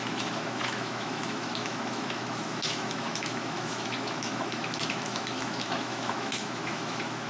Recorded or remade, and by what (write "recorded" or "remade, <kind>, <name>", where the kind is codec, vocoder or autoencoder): remade, autoencoder, DAC-VAE